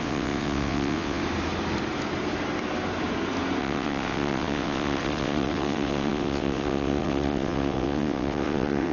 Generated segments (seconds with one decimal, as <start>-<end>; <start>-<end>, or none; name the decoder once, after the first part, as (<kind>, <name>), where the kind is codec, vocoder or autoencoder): 0.0-1.2 (vocoder, WaveNeXt); 3.6-8.9